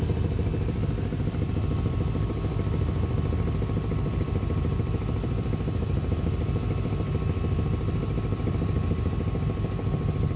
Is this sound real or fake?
real